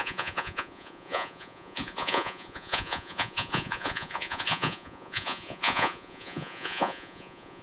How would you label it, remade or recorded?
remade